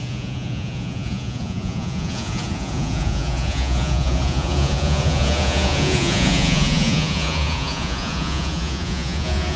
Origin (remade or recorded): remade